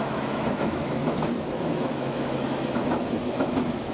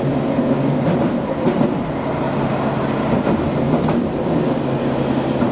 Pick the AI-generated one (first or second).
first